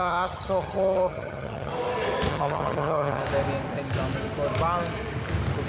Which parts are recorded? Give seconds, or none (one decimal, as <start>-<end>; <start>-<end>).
1.7-2.3; 3.2-5.7